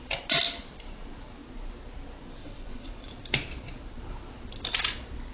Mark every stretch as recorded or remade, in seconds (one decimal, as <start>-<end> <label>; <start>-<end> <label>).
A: 0.0-2.4 recorded; 2.4-3.1 remade; 3.1-5.3 recorded